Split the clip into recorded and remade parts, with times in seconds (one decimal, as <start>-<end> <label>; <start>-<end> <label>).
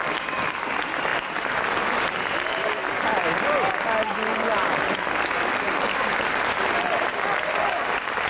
0.0-8.3 recorded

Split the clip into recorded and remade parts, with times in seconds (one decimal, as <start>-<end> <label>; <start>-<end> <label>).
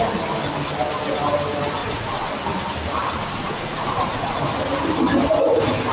0.0-1.8 recorded; 1.8-2.3 remade; 2.3-3.2 recorded; 3.2-4.4 remade; 4.4-5.9 recorded